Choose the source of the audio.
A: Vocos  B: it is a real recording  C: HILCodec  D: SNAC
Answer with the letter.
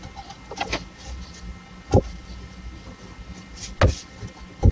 B